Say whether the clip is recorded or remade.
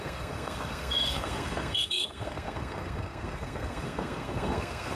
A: remade